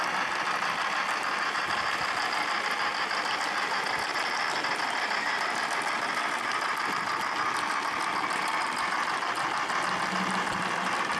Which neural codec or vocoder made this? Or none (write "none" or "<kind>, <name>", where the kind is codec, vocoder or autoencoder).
none